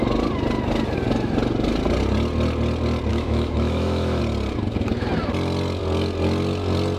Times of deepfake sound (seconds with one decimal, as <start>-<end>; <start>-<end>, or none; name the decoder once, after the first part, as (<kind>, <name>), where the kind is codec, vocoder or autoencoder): 3.1-4.2 (autoencoder, DAC-VAE)